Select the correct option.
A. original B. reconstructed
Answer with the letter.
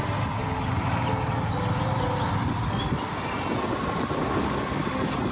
A